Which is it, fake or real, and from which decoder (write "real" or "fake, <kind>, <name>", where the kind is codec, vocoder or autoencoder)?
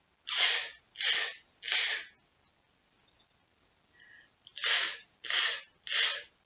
real